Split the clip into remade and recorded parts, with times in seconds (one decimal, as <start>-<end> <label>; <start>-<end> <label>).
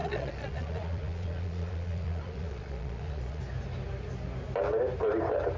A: 0.0-3.4 remade; 3.4-5.6 recorded